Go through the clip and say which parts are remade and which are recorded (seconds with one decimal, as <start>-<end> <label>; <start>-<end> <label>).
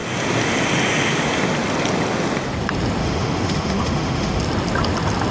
0.0-3.0 recorded; 3.0-4.4 remade; 4.4-5.3 recorded